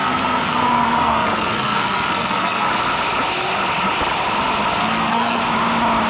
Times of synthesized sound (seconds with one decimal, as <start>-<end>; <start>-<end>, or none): 0.0-2.7; 4.8-5.4